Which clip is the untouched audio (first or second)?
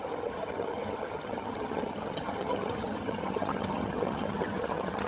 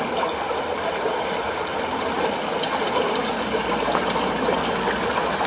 second